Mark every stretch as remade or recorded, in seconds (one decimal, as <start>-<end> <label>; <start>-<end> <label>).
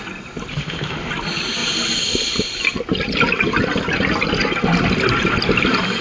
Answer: 0.0-0.5 recorded; 0.5-1.1 remade; 1.1-6.0 recorded